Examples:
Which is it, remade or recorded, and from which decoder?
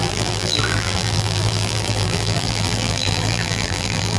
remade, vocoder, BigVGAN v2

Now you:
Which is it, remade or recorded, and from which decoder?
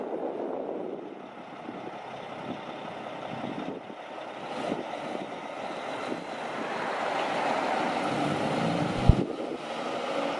recorded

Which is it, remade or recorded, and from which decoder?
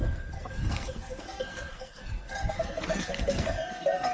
remade, codec, SNAC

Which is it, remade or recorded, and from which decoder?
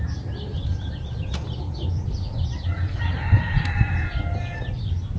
recorded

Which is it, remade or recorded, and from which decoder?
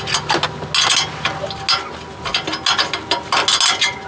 recorded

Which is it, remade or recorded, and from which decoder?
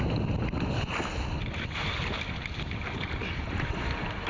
recorded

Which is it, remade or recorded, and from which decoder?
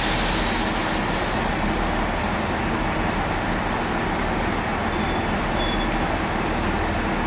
recorded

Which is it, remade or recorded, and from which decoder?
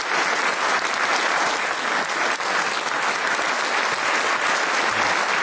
recorded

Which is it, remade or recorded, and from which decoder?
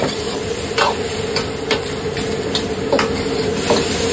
recorded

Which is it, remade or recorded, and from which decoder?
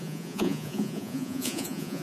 remade, vocoder, Vocos